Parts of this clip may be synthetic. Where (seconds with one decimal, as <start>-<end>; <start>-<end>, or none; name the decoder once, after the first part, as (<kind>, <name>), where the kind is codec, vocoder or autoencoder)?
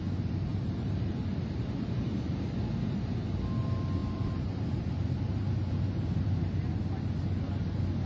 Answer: 0.5-2.4 (vocoder, BigVGAN v2); 4.0-6.4